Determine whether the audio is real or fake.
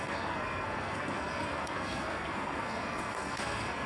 fake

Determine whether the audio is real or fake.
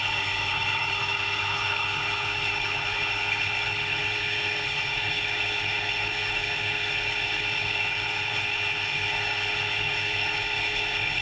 fake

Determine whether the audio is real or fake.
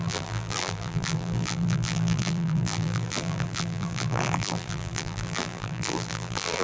fake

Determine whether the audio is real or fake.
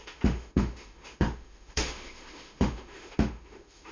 fake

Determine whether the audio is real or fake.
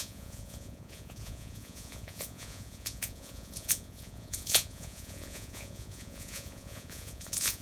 fake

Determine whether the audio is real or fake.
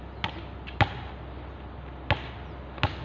real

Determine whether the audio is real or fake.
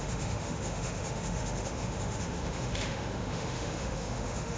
fake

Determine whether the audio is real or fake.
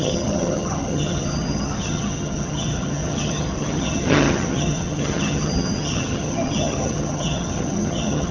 fake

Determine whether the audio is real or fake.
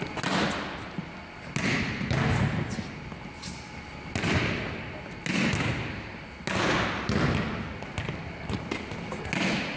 real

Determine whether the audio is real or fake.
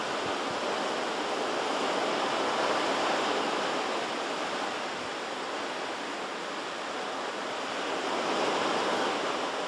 real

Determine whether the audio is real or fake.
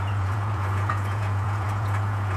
fake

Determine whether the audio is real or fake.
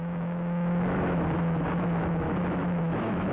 fake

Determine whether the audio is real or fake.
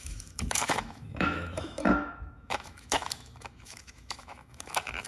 fake